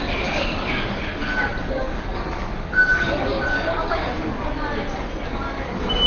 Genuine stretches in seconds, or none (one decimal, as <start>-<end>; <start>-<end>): 4.3-5.3